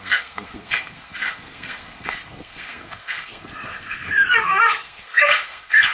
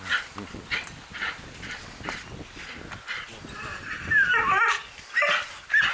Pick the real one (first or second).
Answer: second